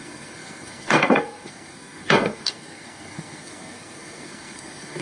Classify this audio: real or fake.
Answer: fake